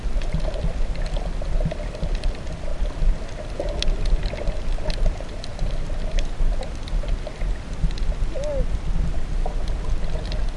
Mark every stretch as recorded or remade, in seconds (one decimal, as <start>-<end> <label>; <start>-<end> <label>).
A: 0.0-5.5 recorded; 5.5-6.3 remade; 6.3-10.6 recorded